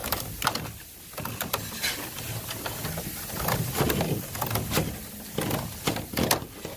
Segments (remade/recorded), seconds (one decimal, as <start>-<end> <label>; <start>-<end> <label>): 0.0-6.8 recorded